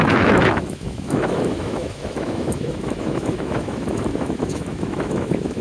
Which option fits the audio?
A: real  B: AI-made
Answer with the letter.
B